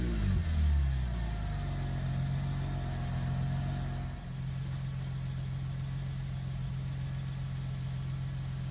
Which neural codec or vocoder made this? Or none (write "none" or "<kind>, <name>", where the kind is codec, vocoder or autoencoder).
none